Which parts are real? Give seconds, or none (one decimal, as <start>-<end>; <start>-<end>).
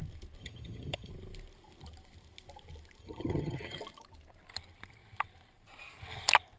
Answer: 0.0-0.4; 1.1-3.0; 3.8-6.6